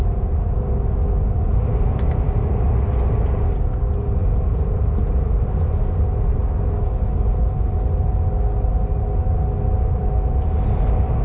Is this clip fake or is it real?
real